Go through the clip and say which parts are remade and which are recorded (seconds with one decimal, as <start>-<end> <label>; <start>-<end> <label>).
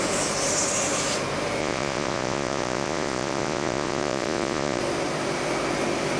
0.0-1.6 recorded; 1.6-4.8 remade; 4.8-6.2 recorded